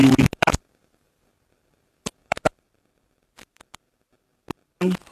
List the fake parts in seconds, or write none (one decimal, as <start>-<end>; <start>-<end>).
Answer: 0.0-0.6; 2.2-3.8